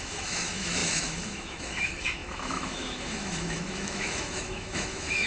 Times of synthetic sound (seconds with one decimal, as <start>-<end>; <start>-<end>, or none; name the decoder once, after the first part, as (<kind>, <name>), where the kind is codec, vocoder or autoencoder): 0.0-5.3 (autoencoder, DAC-VAE)